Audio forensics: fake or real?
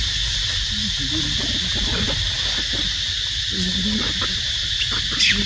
real